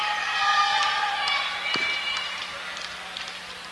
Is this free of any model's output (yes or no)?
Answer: yes